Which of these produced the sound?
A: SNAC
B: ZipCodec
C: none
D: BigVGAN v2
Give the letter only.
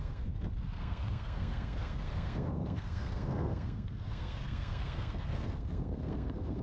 A